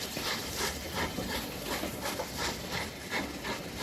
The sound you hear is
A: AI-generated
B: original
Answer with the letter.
B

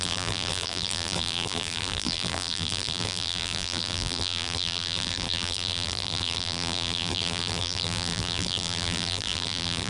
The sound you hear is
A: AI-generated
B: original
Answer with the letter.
A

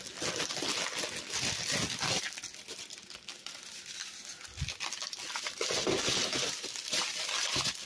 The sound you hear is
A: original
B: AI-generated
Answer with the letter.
A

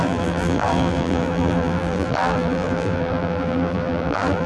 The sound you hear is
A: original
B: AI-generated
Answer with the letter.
B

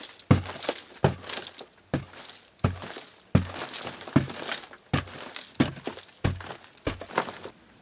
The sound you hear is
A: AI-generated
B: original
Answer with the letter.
B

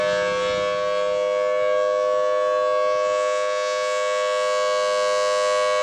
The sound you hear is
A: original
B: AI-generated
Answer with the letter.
A